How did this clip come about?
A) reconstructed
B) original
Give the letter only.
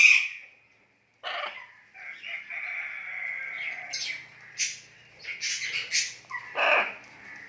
B